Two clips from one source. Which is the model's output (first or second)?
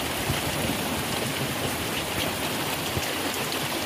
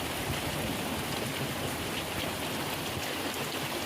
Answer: first